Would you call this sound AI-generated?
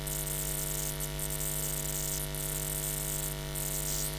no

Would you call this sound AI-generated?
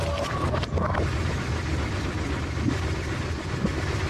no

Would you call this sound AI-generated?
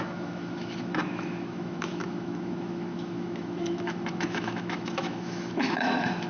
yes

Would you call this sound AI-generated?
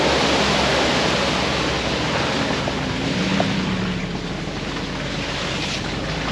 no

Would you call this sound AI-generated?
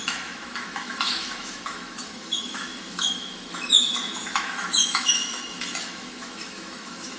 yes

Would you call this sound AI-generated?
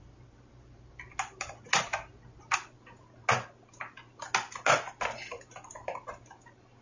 no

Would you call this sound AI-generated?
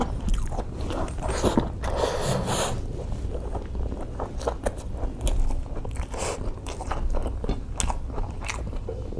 no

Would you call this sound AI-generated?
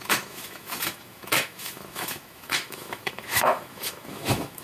yes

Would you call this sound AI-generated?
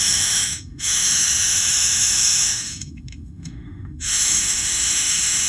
yes